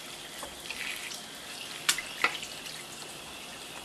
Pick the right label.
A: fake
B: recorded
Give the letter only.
B